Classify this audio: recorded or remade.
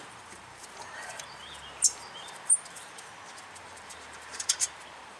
remade